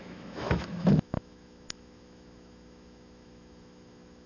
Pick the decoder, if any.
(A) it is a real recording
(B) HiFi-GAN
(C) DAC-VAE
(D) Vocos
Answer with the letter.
C